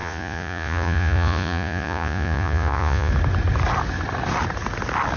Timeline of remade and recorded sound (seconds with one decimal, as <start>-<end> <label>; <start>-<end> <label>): 0.0-3.1 remade; 3.1-5.2 recorded